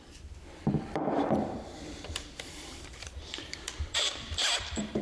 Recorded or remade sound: remade